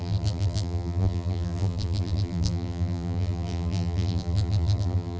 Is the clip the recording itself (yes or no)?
no